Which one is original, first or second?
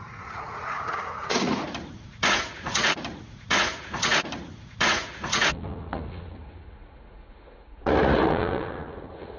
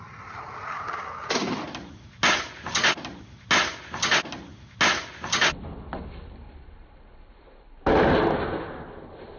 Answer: second